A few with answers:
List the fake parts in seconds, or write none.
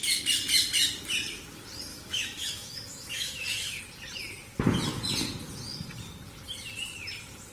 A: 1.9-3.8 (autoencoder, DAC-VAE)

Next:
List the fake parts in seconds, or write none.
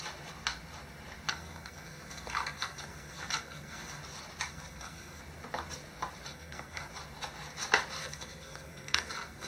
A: 1.3-4.0 (codec, SNAC); 4.5-5.2; 6.3-6.9; 8.0-9.5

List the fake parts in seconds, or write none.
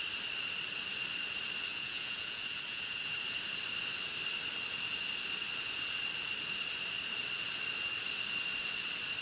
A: 1.7-3.1 (vocoder, Vocos)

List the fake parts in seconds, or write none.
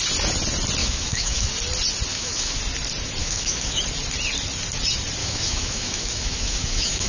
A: 0.8-1.5 (autoencoder, DAC-VAE); 2.1-2.6; 3.2-3.8; 5.2-7.1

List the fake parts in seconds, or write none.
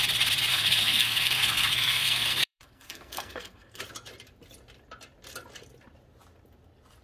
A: 0.5-3.8 (codec, SNAC)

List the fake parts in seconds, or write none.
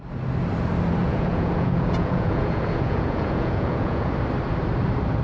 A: 1.0-4.1 (vocoder, Vocos)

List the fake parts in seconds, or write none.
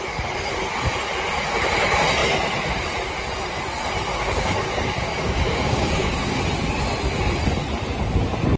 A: 4.1-6.4 (codec, DAC)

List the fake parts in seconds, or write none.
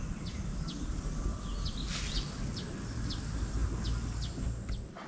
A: none